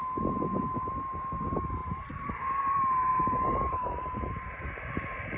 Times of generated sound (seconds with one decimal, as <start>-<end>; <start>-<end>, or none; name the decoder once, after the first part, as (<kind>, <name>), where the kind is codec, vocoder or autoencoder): 1.8-2.4 (vocoder, BigVGAN v2); 3.1-5.4